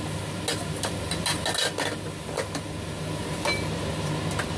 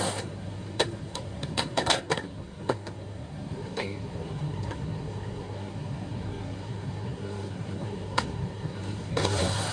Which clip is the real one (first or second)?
first